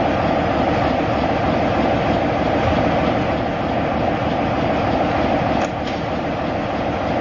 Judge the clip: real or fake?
real